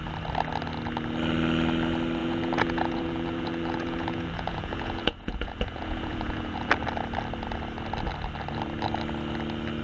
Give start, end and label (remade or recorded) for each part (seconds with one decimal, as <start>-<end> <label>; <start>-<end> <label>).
0.0-2.2 recorded; 2.2-6.7 remade; 6.7-9.8 recorded